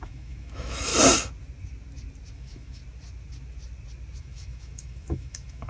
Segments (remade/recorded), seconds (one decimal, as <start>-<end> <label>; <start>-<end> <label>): 0.0-0.9 remade; 0.9-2.3 recorded; 2.3-2.8 remade; 2.8-4.2 recorded; 4.2-5.7 remade